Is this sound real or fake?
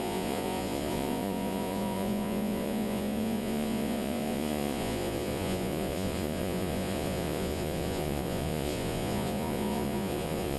fake